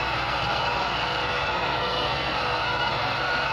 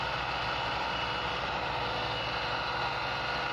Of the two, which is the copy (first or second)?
first